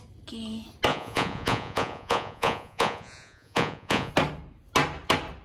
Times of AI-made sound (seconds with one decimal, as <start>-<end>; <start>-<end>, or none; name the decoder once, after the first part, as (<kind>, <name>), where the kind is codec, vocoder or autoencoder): 0.9-4.1 (vocoder, Vocos)